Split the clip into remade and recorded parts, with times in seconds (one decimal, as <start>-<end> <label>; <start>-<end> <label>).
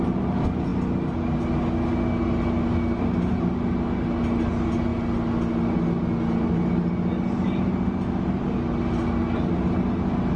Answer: 0.0-10.4 recorded